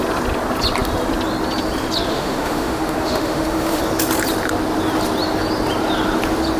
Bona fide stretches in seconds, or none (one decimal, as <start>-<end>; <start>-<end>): 0.0-2.1; 3.8-6.6